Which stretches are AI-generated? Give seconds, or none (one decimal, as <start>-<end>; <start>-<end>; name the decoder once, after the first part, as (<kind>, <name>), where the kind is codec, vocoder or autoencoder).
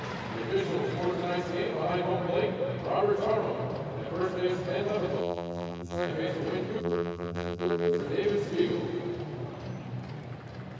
5.2-6.1 (vocoder, BigVGAN v2); 6.8-8.0